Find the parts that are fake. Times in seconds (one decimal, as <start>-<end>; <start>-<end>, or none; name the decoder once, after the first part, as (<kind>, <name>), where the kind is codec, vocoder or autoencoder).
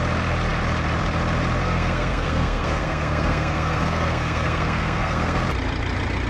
1.6-5.4 (codec, SNAC)